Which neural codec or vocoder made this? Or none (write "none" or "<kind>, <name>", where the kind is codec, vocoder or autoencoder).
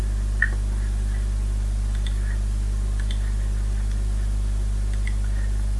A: none